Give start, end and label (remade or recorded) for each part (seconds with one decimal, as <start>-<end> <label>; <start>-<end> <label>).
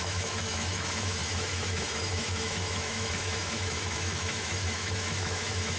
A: 0.0-5.8 remade